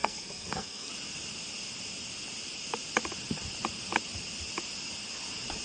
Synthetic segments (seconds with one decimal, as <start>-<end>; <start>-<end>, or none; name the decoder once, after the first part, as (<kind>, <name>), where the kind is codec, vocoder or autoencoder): 0.0-0.9 (codec, SNAC)